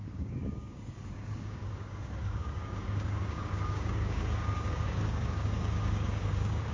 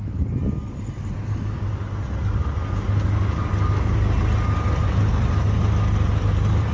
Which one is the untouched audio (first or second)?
second